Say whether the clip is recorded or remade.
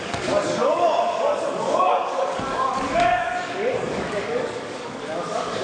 remade